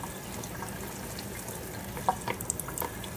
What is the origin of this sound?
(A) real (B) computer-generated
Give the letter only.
A